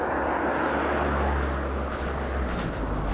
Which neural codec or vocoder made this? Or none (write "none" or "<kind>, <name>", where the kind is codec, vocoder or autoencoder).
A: none